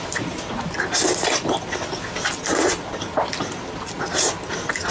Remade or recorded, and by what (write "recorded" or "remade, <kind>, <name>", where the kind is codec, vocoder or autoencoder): recorded